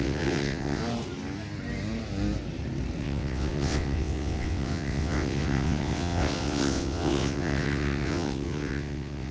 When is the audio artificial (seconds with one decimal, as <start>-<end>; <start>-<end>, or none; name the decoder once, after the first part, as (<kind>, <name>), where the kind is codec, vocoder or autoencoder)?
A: 0.0-0.8 (vocoder, WaveNeXt); 3.0-9.3